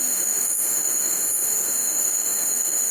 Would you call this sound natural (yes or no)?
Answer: no